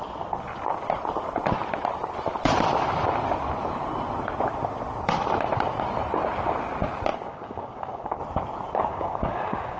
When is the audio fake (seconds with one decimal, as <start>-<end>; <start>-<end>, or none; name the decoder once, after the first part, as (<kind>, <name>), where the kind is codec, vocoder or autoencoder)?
7.1-8.2 (codec, DAC); 8.9-9.8

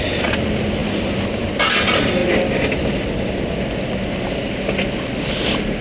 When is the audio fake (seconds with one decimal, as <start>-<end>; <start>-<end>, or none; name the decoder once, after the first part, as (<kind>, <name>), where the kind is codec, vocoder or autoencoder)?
none

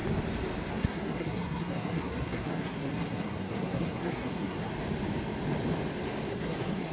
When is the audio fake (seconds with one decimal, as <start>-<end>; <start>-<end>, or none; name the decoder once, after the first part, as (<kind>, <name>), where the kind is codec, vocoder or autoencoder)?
0.7-4.7 (codec, SNAC); 6.3-6.9

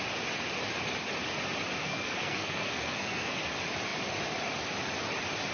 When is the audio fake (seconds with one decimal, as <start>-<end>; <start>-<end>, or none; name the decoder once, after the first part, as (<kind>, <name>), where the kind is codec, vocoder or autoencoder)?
1.8-3.4 (codec, SNAC)